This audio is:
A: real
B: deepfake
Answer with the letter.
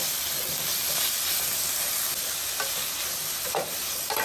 A